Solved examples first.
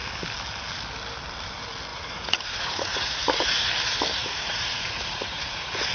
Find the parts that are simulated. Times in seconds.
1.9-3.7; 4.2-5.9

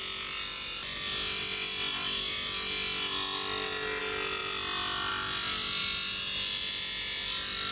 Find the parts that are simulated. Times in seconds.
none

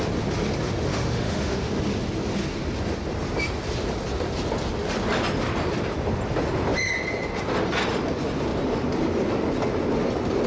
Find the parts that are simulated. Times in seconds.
0.9-1.7

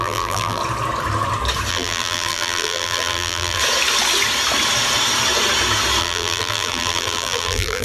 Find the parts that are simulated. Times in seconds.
0.0-0.6; 1.7-3.6; 6.0-7.8

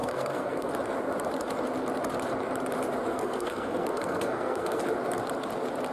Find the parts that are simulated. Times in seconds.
0.0-0.7; 3.1-4.8

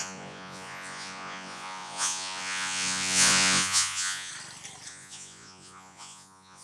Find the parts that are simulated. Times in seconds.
0.0-4.3; 4.9-6.6

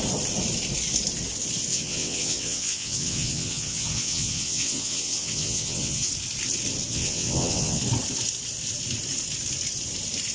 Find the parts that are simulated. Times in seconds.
1.7-6.1; 6.9-7.8